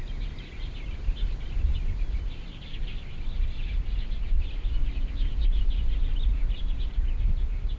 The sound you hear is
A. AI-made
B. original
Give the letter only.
B